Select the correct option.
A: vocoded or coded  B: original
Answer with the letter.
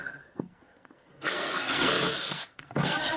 A